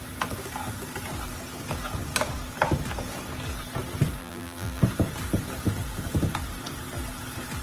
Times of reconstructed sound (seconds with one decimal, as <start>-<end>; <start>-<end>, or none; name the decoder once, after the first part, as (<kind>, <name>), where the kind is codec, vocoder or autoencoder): 4.2-4.8 (vocoder, BigVGAN v2)